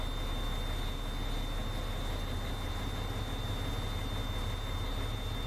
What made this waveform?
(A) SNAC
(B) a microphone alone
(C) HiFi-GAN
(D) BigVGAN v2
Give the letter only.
B